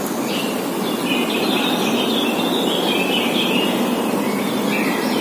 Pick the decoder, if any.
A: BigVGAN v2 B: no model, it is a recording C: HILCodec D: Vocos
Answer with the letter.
B